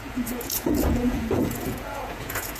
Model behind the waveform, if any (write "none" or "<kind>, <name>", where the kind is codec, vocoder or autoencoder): vocoder, Vocos